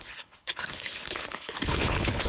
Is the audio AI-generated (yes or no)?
yes